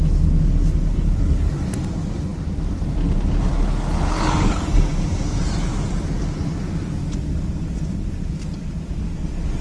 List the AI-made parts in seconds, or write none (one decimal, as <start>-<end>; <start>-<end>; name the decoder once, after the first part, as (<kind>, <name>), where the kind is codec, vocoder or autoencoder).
none